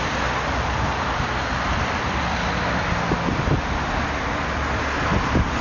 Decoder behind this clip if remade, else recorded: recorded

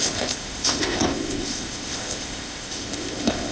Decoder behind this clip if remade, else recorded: remade, codec, ZipCodec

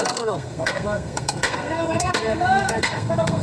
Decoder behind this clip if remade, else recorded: remade, codec, SNAC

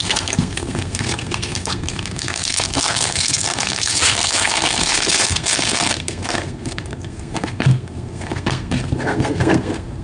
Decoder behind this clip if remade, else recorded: remade, codec, SNAC